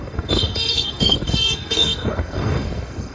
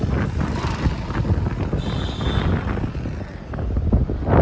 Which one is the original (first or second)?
second